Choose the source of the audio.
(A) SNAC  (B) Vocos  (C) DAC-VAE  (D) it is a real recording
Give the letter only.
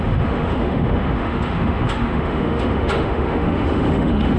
C